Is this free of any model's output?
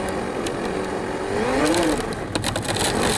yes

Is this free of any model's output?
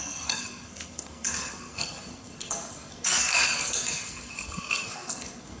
no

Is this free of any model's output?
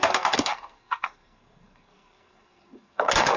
no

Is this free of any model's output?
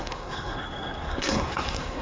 no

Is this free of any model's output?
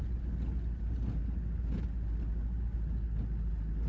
yes